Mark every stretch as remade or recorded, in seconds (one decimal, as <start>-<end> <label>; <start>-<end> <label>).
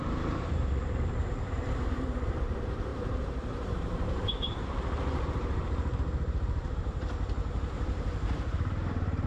0.0-9.3 remade